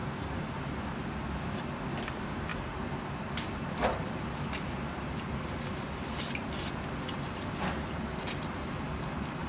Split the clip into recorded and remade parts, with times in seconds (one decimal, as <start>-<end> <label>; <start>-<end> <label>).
0.0-9.5 recorded